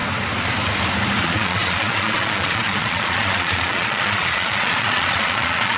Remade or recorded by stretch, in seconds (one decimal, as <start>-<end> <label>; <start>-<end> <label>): 0.0-1.2 recorded; 1.2-5.8 remade